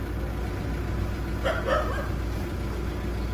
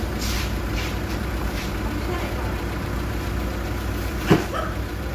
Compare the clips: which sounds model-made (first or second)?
second